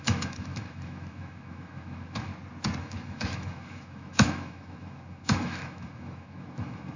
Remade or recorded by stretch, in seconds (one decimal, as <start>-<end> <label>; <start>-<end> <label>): 0.0-2.3 remade; 2.3-2.8 recorded; 2.8-7.0 remade